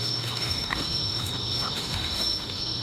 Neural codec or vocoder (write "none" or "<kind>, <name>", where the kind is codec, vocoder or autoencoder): autoencoder, DAC-VAE